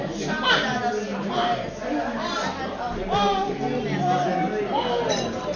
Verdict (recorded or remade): recorded